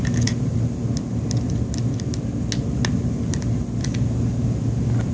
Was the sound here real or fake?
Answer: real